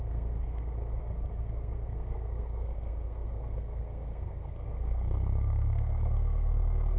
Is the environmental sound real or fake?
fake